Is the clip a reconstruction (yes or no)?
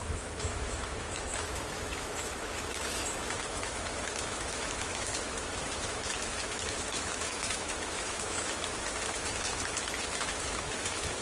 yes